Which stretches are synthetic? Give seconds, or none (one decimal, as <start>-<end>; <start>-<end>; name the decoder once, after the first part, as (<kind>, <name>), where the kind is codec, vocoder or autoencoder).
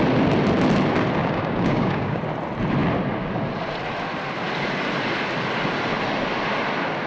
1.2-2.2 (codec, DAC)